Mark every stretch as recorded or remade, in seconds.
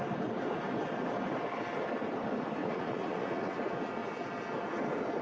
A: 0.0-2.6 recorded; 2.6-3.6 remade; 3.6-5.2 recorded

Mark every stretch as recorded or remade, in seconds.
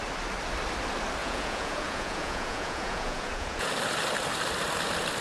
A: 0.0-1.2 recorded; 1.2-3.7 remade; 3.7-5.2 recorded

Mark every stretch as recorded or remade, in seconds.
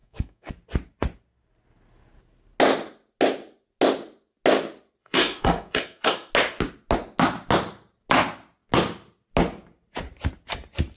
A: 0.0-0.5 remade; 0.5-5.0 recorded; 5.0-6.3 remade; 6.3-11.0 recorded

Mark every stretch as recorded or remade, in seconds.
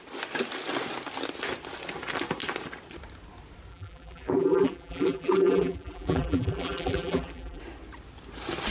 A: 0.0-3.7 recorded; 3.7-7.6 remade; 7.6-8.7 recorded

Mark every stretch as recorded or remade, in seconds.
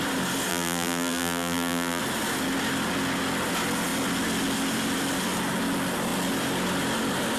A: 0.0-0.5 recorded; 0.5-2.0 remade; 2.0-7.4 recorded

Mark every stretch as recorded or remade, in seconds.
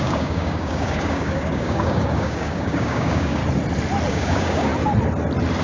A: 0.0-3.4 remade; 3.4-4.1 recorded; 4.1-4.7 remade; 4.7-5.6 recorded